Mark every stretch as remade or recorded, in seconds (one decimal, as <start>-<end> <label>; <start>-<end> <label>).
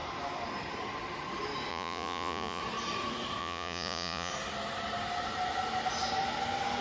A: 0.0-1.7 recorded; 1.7-2.6 remade; 2.6-3.4 recorded; 3.4-4.3 remade; 4.3-6.8 recorded